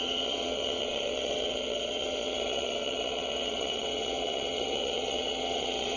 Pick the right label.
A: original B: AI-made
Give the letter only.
B